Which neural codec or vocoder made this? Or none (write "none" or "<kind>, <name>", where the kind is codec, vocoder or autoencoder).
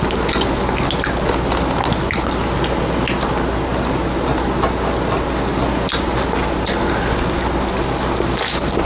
none